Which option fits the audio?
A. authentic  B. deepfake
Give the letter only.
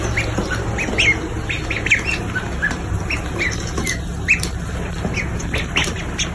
A